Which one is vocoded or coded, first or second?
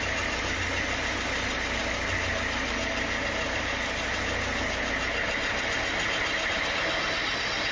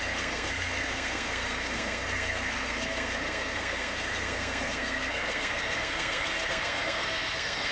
second